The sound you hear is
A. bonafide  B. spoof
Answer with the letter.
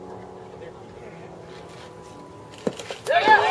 A